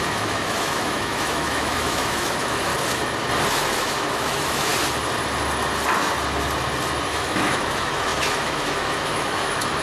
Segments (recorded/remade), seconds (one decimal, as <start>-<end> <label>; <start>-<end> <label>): 0.0-2.7 remade; 2.7-3.5 recorded; 3.5-4.7 remade; 4.7-7.1 recorded; 7.1-9.8 remade